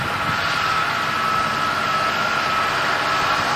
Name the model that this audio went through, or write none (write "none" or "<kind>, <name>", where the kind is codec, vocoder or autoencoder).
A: none